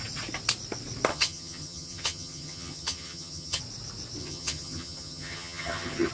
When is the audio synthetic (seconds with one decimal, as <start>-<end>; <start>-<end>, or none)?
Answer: 1.1-3.6; 4.2-6.1